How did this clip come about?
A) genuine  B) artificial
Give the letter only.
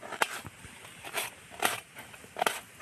A